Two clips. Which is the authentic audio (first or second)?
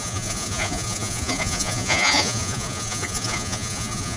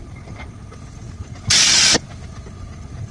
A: second